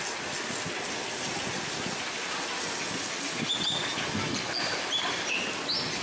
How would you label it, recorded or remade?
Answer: recorded